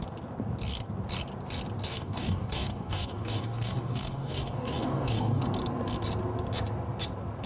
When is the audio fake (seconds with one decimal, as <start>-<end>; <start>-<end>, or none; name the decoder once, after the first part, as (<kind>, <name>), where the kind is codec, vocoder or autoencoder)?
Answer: 1.9-5.4 (codec, DAC)

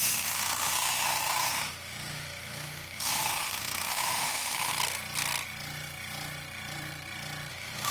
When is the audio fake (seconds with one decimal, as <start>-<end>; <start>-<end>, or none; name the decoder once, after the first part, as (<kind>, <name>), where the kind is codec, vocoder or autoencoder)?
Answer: 0.0-4.7 (autoencoder, DAC-VAE); 7.5-7.9

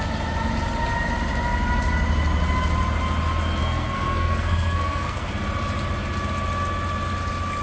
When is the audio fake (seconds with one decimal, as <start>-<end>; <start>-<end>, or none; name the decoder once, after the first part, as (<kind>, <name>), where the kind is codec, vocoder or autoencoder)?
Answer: 3.6-5.3 (codec, SNAC)

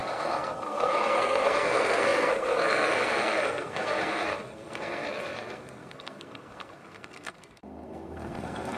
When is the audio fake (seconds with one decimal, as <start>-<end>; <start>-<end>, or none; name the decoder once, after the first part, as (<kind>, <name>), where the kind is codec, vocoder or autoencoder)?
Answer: 0.0-8.8 (codec, SNAC)

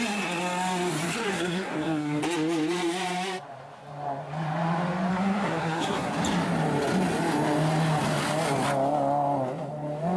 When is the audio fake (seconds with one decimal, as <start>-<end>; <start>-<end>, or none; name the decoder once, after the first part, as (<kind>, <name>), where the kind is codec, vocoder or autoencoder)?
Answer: 1.3-2.2 (codec, SNAC); 5.1-6.1

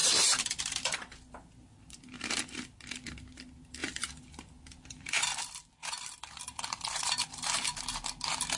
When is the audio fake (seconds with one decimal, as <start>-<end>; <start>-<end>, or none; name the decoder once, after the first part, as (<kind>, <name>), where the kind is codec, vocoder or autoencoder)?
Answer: 0.0-2.3 (vocoder, BigVGAN v2); 3.8-7.8

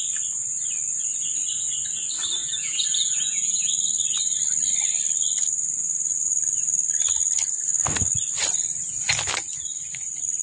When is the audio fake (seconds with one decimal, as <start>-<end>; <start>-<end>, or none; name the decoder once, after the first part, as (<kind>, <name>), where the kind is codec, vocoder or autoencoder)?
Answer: 2.4-3.7 (vocoder, Vocos)